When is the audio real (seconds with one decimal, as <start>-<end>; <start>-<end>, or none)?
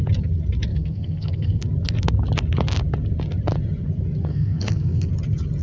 0.0-0.7; 1.6-4.3; 5.1-5.6